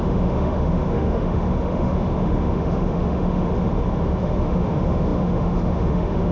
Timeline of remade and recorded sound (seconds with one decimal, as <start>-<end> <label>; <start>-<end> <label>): 0.0-3.5 remade; 3.5-4.2 recorded; 4.2-6.3 remade

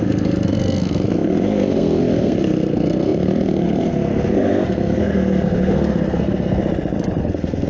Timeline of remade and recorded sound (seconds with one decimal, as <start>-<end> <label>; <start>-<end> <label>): 0.0-6.6 remade; 6.6-7.2 recorded; 7.2-7.7 remade